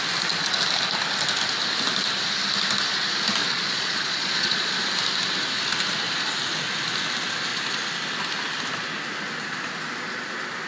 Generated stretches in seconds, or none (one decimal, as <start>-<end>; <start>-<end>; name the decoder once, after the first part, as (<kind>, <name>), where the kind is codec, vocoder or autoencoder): 3.4-4.7 (vocoder, Vocos)